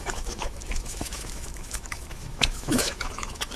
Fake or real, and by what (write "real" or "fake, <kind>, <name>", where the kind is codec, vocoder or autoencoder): fake, autoencoder, DAC-VAE